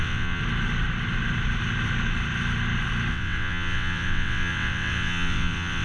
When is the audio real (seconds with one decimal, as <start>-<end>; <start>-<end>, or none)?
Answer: 0.4-3.1